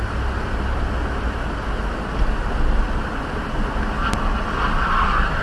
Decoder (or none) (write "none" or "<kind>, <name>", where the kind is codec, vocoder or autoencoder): none